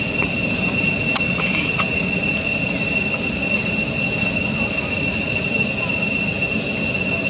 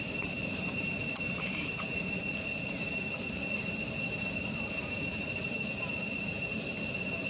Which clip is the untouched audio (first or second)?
first